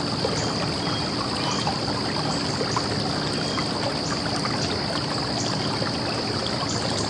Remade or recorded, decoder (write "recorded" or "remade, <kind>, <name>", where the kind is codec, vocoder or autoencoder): recorded